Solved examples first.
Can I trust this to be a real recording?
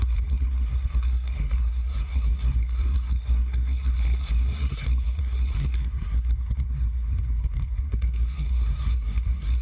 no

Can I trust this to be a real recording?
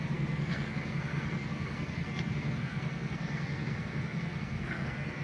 no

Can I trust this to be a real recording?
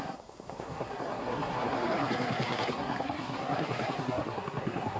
no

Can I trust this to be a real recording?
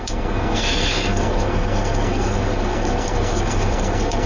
no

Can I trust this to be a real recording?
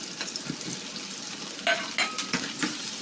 yes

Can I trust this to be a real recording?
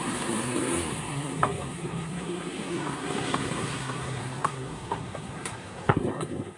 no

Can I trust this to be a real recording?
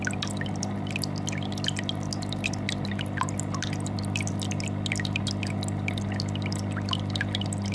yes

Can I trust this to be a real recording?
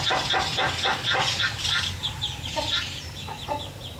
yes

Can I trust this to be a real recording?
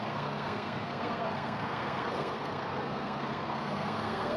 no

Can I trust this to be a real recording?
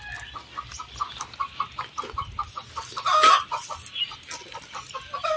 yes